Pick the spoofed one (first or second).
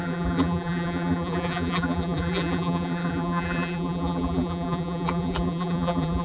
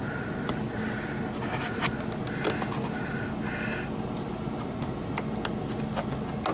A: first